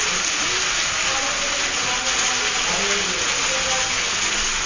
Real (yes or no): yes